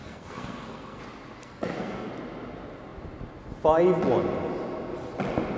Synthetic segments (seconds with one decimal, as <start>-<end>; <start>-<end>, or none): 0.0-1.0; 1.4-2.1

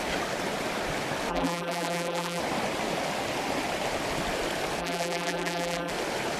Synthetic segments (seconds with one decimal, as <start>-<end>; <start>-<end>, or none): 1.3-2.4; 4.8-5.9

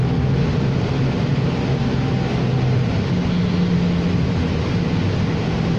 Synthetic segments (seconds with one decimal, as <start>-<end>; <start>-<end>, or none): none

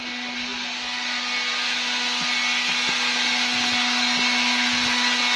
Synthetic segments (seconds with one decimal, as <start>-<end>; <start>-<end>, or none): none

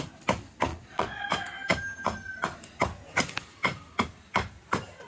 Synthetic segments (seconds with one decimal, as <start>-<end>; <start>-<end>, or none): 0.7-1.2

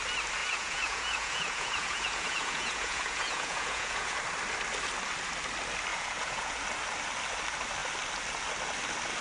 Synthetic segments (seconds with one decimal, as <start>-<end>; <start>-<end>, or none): 0.4-4.2; 5.9-6.6

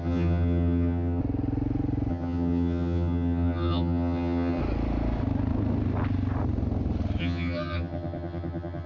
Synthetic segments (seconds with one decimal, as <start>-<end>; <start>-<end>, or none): 0.0-1.2; 2.1-4.6; 7.2-8.9